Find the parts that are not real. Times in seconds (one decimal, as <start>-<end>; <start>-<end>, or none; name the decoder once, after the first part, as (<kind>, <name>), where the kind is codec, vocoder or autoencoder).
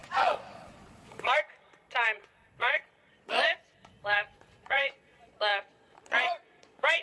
0.0-7.0 (vocoder, Vocos)